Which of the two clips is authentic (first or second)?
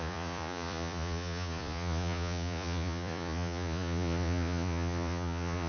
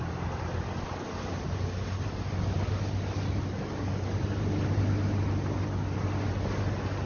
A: second